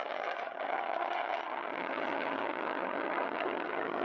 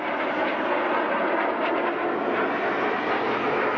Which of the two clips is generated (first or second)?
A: first